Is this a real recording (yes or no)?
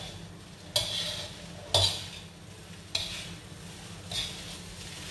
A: yes